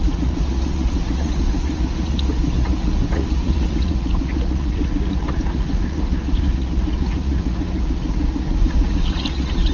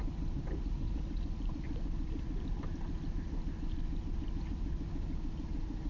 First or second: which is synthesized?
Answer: first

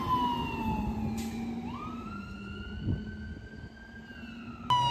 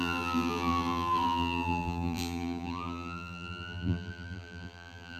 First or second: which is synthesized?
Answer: second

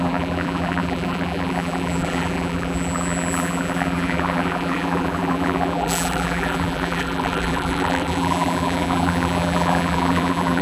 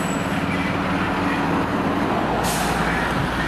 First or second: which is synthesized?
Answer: first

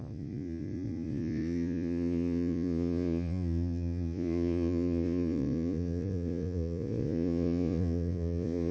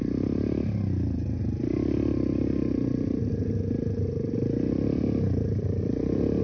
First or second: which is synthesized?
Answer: first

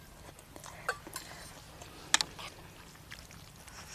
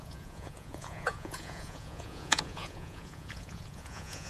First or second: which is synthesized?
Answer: second